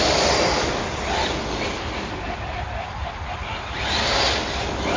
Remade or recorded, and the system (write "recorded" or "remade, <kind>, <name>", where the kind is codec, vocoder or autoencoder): recorded